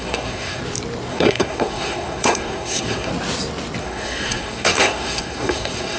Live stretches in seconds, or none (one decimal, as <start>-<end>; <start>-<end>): 0.6-1.1; 3.1-3.8